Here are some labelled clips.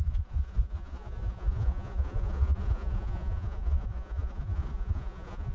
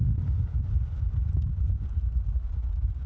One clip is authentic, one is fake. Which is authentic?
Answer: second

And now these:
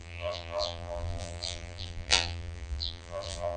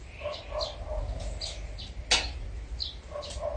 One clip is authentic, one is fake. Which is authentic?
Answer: second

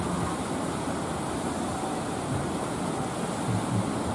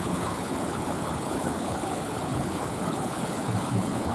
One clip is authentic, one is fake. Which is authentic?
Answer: first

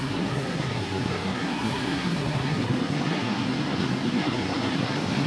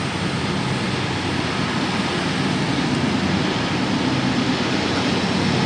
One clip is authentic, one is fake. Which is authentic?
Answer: second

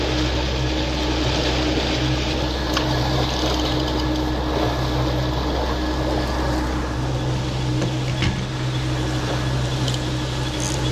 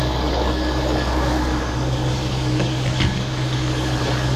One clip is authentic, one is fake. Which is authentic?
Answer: first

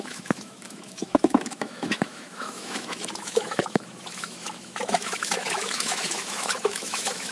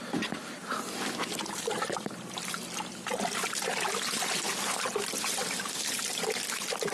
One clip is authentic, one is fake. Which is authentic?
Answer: second